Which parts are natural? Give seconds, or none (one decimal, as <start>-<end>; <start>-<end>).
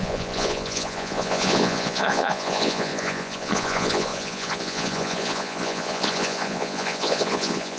none